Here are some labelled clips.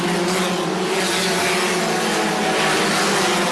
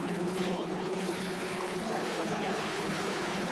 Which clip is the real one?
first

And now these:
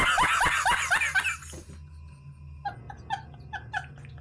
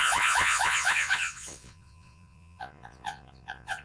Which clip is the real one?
first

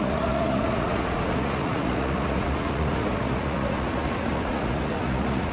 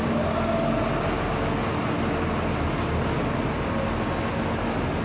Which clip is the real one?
second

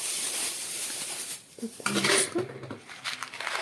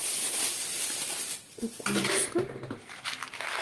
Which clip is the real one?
second